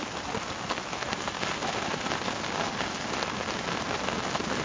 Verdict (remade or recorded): recorded